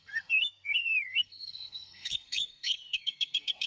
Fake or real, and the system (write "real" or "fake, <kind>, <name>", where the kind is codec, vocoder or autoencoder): fake, codec, SNAC